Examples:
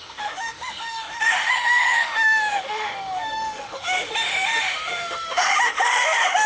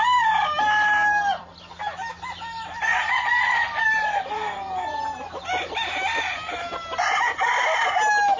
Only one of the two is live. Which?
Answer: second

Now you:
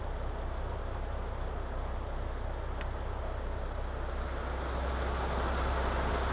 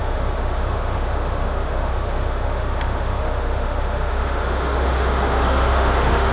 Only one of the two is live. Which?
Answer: first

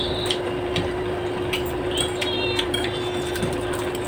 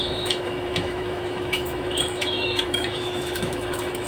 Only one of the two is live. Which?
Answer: first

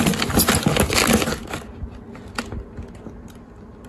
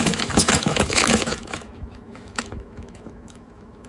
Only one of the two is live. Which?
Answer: first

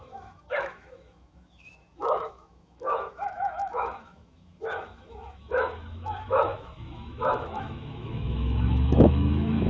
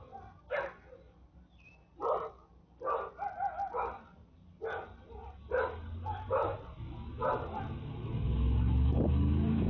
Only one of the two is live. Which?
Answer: second